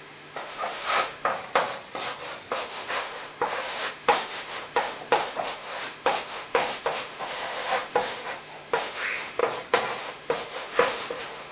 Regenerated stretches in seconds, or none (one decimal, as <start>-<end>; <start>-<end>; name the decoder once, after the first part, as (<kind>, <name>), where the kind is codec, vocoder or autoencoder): 0.0-1.3 (autoencoder, DAC-VAE); 2.5-9.4; 10.0-11.5